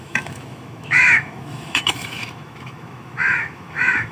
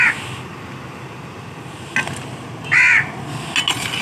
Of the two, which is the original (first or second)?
second